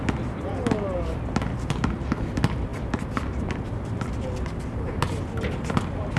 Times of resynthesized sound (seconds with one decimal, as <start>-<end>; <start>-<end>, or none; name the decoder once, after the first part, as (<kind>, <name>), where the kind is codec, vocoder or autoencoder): none

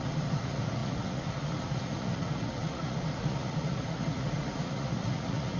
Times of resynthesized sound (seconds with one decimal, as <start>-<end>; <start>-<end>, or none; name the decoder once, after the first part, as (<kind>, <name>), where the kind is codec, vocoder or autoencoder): 0.0-5.6 (vocoder, Vocos)

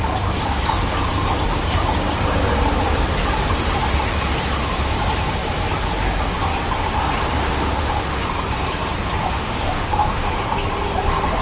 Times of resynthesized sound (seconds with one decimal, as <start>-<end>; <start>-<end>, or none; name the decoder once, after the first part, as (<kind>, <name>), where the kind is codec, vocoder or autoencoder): 7.4-8.2 (autoencoder, DAC-VAE); 9.3-10.4

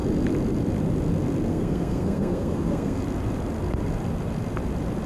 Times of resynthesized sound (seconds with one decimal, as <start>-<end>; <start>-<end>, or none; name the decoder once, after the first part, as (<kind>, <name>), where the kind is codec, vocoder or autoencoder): 1.5-3.0 (codec, SNAC)

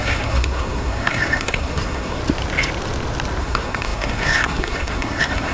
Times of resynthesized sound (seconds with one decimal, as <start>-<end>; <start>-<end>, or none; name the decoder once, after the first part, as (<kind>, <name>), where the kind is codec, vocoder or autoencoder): 0.0-2.2 (codec, SNAC); 3.4-5.5

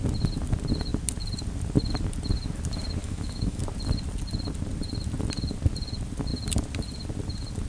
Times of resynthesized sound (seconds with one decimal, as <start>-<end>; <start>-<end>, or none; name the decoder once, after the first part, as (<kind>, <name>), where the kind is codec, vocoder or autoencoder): 3.0-3.6 (autoencoder, DAC-VAE)